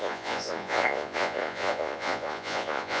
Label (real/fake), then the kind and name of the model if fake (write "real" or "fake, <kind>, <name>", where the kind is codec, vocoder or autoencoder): fake, vocoder, Vocos